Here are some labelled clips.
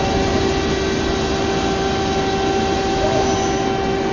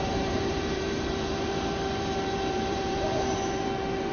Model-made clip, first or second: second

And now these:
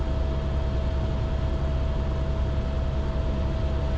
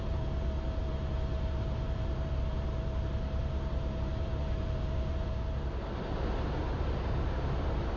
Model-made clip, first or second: second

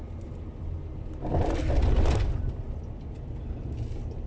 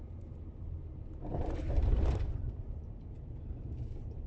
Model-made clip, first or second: second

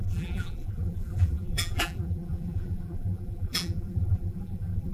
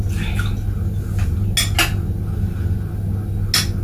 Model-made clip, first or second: first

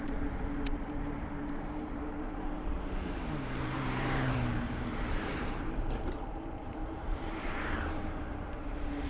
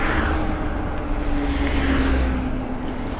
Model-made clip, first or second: first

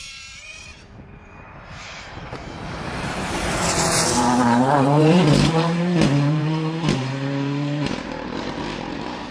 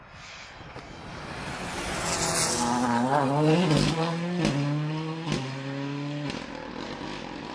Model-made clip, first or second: first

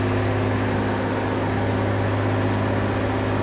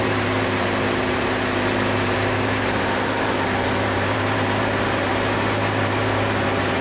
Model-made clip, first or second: second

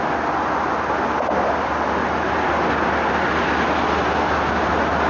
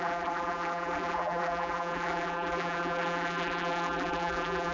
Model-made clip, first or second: second